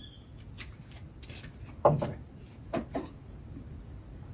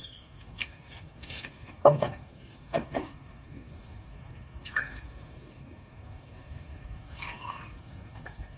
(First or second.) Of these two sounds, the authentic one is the first